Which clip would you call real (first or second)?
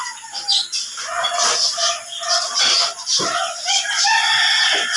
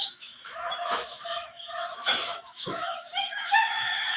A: first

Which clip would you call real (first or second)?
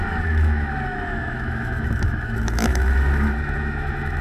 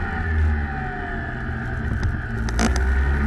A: second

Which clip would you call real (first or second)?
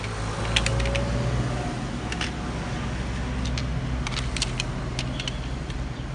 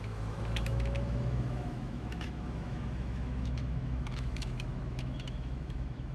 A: first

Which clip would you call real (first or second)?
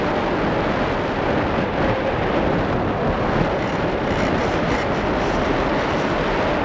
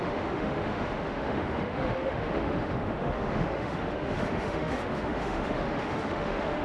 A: first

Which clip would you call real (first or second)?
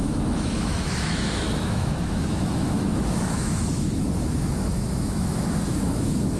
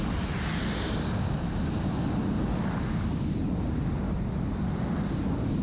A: second